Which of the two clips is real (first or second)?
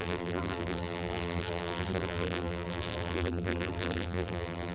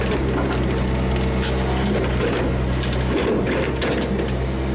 second